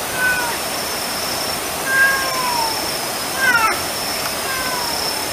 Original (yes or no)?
no